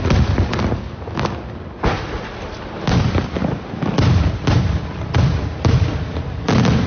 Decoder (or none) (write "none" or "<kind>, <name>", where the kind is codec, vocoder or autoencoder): none